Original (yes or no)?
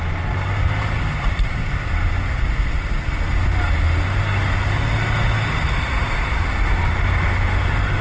yes